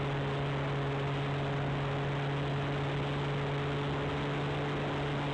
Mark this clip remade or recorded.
recorded